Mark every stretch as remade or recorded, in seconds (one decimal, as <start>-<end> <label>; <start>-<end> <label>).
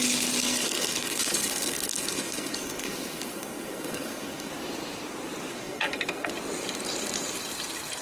0.0-0.4 recorded; 0.4-4.5 remade; 4.5-5.5 recorded; 5.5-6.3 remade; 6.3-8.0 recorded